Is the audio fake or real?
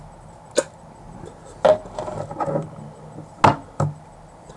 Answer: real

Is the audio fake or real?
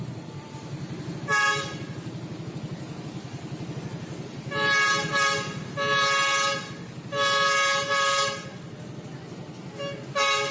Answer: real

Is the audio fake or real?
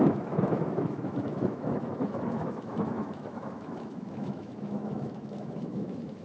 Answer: fake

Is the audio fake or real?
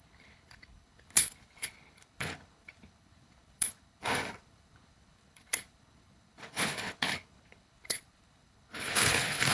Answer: fake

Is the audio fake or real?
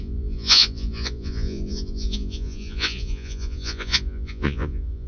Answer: fake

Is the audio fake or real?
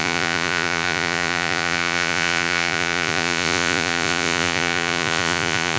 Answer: fake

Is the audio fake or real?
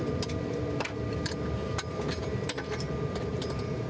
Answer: fake